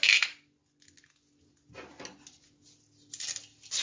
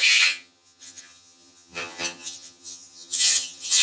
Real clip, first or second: first